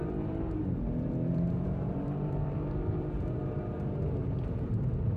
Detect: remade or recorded remade